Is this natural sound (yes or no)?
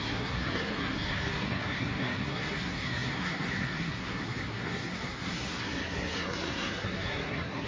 no